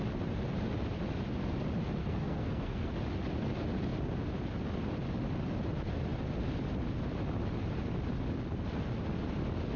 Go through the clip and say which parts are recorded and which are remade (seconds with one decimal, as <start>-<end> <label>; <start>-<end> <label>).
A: 0.0-2.0 recorded; 2.0-2.9 remade; 2.9-9.8 recorded